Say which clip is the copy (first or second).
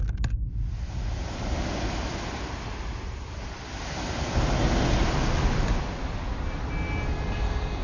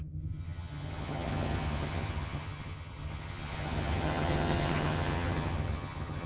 second